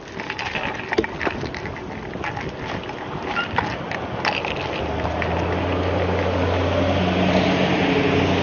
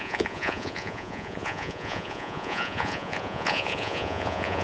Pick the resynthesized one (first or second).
second